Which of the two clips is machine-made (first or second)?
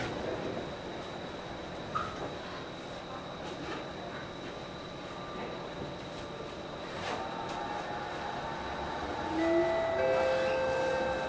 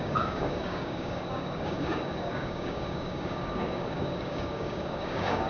second